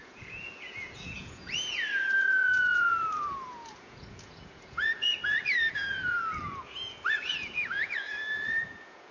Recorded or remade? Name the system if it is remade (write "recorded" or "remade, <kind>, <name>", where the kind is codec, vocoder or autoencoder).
remade, vocoder, Vocos